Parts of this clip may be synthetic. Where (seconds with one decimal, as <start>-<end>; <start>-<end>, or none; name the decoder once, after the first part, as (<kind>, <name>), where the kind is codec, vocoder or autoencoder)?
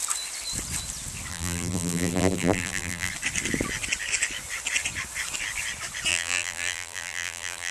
1.3-3.1 (vocoder, BigVGAN v2); 6.1-7.7